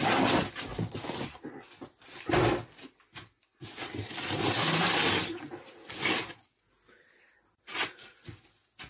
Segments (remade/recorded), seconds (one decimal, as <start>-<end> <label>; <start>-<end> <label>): 0.0-8.9 recorded